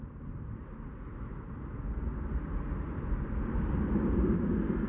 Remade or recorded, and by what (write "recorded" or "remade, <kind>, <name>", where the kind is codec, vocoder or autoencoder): remade, vocoder, BigVGAN v2